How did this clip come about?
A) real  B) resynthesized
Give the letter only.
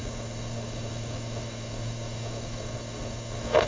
B